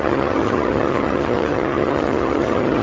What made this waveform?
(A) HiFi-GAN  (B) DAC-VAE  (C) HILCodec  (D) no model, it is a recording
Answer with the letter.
A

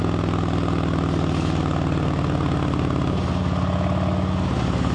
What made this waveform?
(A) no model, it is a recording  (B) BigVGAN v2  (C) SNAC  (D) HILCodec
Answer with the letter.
A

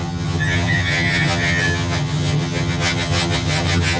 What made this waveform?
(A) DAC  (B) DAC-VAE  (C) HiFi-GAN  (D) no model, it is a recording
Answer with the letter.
C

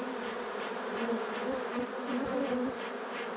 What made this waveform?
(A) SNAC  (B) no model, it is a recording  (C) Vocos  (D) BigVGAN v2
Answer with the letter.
B